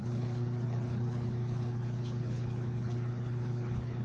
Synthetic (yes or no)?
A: yes